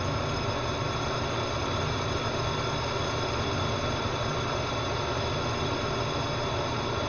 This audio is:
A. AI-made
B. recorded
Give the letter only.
B